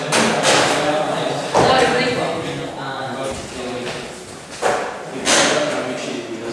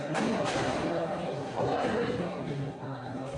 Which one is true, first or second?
first